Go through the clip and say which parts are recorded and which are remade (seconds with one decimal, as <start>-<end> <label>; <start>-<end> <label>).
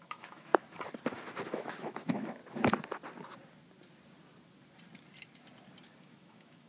0.0-0.5 remade; 0.5-1.5 recorded; 1.5-2.4 remade; 2.4-6.0 recorded; 6.0-6.7 remade